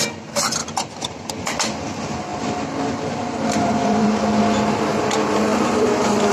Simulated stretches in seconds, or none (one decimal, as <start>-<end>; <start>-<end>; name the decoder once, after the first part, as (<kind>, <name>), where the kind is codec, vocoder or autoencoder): 0.6-1.3 (vocoder, BigVGAN v2); 2.3-4.2; 5.5-6.3